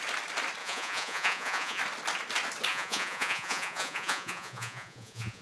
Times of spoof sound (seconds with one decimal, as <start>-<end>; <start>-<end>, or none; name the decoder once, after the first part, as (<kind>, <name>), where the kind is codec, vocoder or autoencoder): 0.6-1.8 (vocoder, Vocos); 2.7-5.4